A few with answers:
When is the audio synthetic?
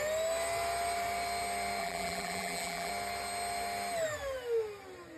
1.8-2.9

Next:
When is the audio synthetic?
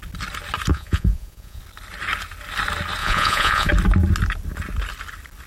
0.7-1.6; 3.0-3.7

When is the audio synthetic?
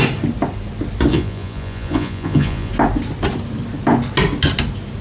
1.1-2.7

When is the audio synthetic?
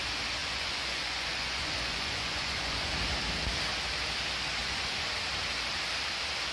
0.4-2.9; 4.6-5.1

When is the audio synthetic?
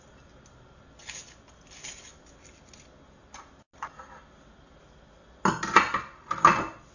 none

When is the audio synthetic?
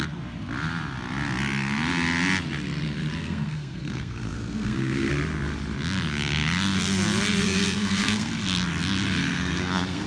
3.2-5.1; 7.4-8.3; 9.2-10.1